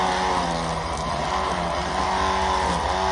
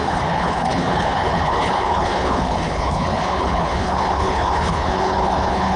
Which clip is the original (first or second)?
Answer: first